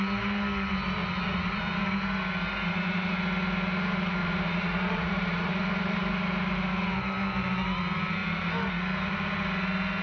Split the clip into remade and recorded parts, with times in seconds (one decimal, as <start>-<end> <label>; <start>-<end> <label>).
0.0-1.0 recorded; 1.0-1.6 remade; 1.6-4.2 recorded; 4.2-5.5 remade; 5.5-10.0 recorded